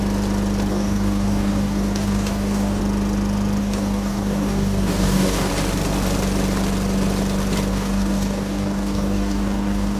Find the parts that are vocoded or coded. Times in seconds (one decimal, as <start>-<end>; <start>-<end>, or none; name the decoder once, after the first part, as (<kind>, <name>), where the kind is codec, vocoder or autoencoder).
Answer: 0.7-2.8 (codec, DAC); 3.6-5.5; 7.7-10.0